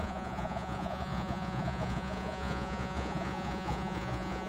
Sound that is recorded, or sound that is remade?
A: remade